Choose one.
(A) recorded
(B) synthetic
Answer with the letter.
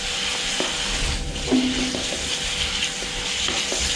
A